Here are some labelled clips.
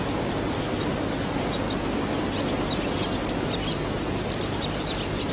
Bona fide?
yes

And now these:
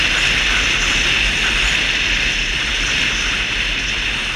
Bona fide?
yes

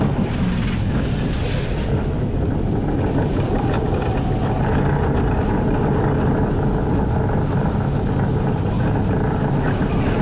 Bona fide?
yes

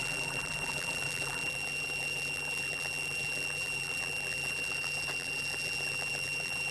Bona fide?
no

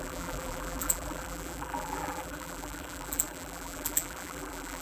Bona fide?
no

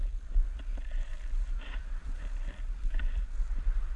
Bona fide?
no